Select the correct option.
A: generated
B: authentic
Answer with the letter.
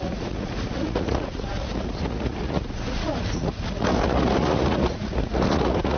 A